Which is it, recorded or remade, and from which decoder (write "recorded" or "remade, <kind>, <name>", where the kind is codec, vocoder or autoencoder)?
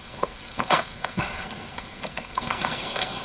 remade, codec, SNAC